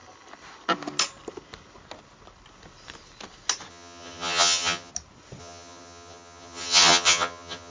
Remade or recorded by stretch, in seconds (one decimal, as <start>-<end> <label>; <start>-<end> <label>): 0.0-3.7 recorded; 3.7-4.9 remade; 4.9-5.4 recorded; 5.4-7.7 remade